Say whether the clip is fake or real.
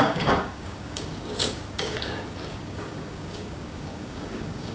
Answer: fake